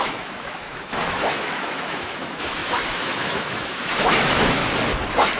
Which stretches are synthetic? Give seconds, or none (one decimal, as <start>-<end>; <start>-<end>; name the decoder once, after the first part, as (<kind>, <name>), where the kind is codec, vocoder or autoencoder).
0.0-4.6 (autoencoder, DAC-VAE)